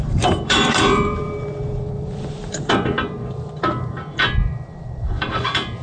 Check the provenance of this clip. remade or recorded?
remade